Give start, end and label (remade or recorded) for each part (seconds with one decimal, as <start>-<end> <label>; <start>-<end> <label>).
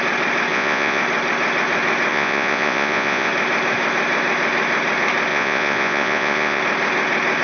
0.0-0.5 recorded; 0.5-1.0 remade; 1.0-2.1 recorded; 2.1-3.3 remade; 3.3-5.3 recorded; 5.3-6.6 remade; 6.6-7.4 recorded